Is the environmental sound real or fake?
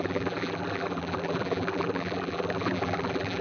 fake